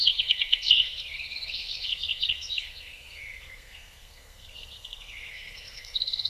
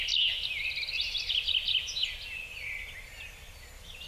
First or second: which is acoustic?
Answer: second